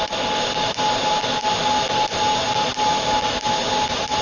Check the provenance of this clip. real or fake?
real